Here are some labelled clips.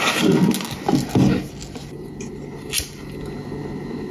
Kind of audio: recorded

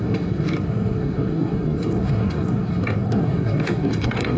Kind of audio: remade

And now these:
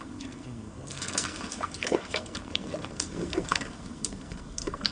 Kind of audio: remade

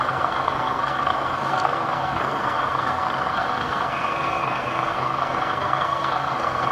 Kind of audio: remade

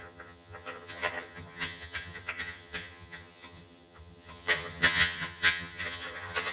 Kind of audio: remade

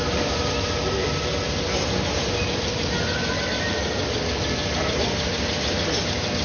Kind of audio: recorded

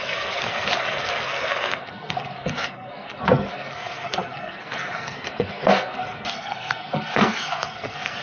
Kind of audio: remade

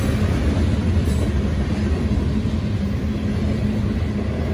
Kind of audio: recorded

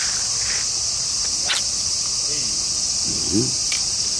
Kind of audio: recorded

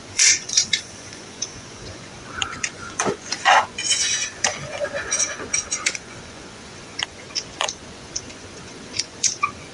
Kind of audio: remade